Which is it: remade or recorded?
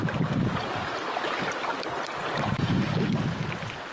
recorded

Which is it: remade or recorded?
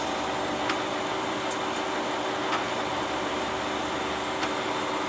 recorded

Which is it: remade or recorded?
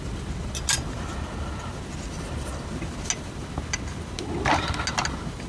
recorded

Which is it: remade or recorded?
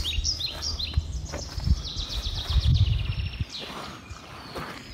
recorded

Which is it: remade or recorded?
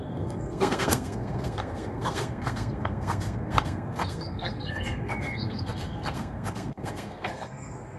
remade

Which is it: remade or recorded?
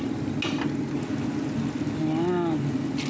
recorded